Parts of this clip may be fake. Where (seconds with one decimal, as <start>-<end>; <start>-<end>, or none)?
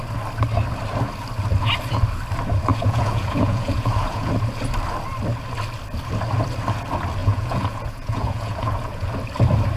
2.7-4.3; 7.2-9.1